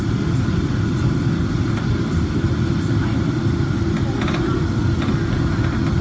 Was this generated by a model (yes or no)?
no